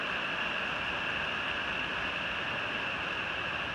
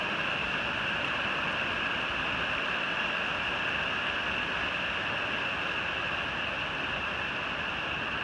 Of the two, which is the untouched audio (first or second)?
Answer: second